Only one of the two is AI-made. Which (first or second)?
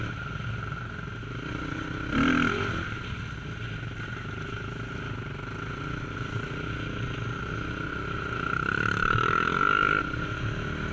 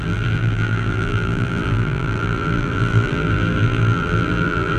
second